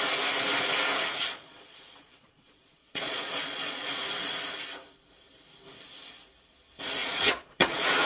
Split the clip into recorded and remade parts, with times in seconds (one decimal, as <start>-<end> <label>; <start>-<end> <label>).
0.0-1.3 recorded; 1.3-3.8 remade; 3.8-7.0 recorded; 7.0-8.1 remade